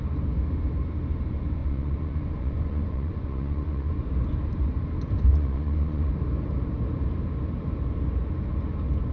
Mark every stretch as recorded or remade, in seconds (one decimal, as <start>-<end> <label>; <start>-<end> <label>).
0.0-1.6 recorded; 1.6-3.9 remade; 3.9-5.3 recorded; 5.3-6.1 remade; 6.1-9.1 recorded